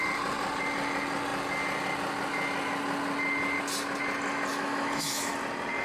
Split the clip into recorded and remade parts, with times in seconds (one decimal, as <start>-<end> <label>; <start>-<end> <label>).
0.0-4.5 recorded; 4.5-5.3 remade; 5.3-5.8 recorded